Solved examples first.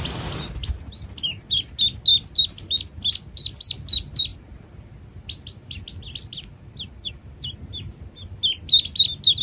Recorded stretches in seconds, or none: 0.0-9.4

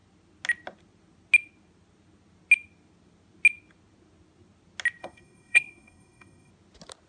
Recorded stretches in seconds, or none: 0.0-5.0; 6.5-7.1

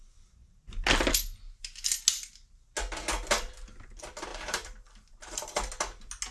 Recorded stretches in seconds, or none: 0.0-4.3; 5.7-6.3

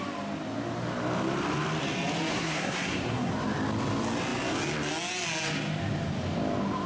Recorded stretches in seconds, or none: 0.0-2.3; 3.3-6.9

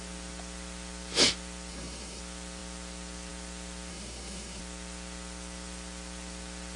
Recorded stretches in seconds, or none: 0.0-1.7; 2.2-3.9; 4.6-6.8

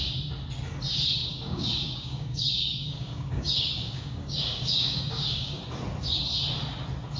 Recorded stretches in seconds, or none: 0.0-1.3; 5.6-7.2

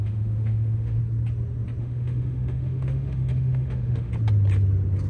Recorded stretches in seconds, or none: 1.0-1.8; 4.1-5.1